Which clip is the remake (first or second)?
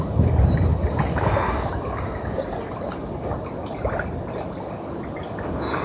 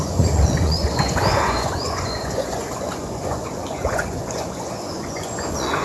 second